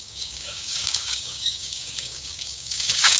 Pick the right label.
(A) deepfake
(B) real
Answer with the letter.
A